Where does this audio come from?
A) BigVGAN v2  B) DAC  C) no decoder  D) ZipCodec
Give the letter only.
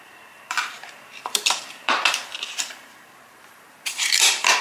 A